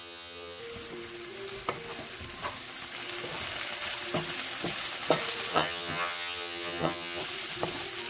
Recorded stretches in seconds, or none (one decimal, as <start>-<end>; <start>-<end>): 0.6-5.5; 7.2-8.1